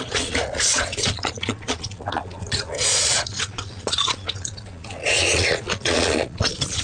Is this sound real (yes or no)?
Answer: no